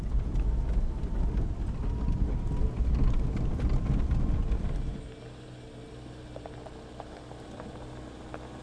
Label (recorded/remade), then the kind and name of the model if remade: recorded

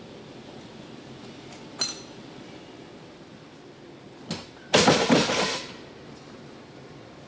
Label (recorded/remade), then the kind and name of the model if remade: recorded